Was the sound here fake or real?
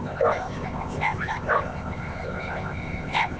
fake